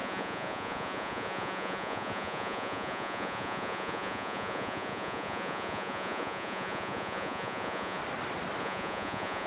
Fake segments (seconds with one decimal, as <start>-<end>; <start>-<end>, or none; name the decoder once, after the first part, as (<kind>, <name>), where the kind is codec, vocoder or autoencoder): 0.0-8.0 (vocoder, Vocos); 8.6-9.5